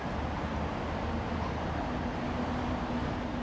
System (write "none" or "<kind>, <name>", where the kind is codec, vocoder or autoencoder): none